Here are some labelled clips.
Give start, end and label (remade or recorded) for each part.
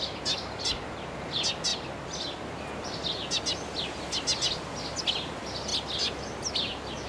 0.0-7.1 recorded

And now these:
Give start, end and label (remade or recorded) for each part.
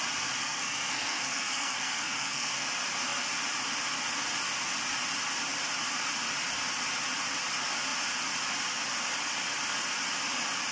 0.0-0.4 recorded; 0.4-2.5 remade; 2.5-10.7 recorded